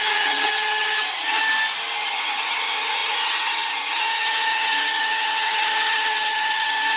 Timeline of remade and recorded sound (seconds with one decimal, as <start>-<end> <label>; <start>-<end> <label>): 0.0-1.4 remade; 1.4-2.0 recorded; 2.0-7.0 remade